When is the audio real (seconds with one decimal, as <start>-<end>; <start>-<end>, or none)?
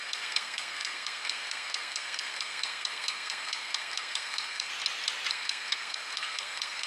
4.7-5.3